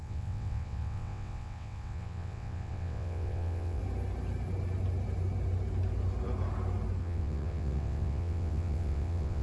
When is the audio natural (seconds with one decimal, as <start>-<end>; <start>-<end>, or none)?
3.8-7.0